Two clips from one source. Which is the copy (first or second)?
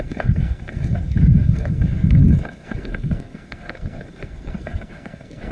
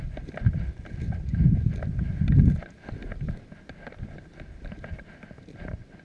first